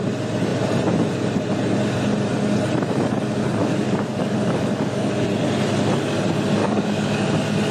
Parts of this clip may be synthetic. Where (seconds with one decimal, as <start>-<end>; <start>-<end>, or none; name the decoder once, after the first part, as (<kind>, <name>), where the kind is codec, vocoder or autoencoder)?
3.6-5.1 (codec, DAC); 6.6-7.3